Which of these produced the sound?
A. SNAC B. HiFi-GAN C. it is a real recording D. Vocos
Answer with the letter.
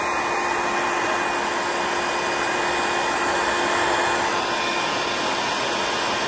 C